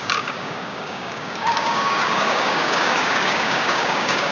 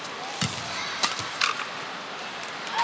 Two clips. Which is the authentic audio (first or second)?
second